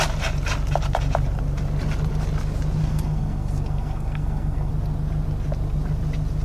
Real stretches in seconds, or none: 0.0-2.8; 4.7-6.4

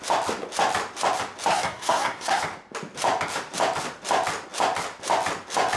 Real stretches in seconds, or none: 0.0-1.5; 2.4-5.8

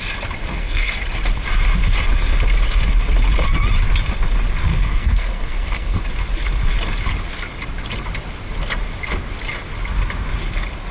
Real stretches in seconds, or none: 0.0-0.4; 1.0-4.7; 6.0-10.9